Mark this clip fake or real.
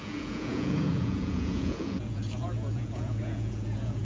fake